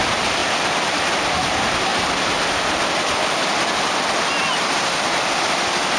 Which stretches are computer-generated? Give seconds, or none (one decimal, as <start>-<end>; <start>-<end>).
0.4-1.0; 1.9-2.5